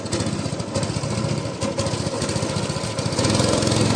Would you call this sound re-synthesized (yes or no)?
no